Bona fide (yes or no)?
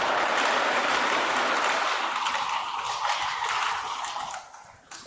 yes